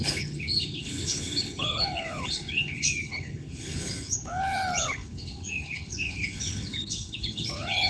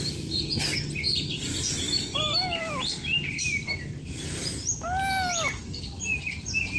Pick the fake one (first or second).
first